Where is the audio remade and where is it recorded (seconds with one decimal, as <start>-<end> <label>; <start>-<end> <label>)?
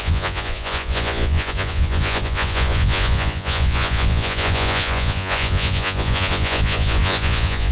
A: 0.0-7.7 remade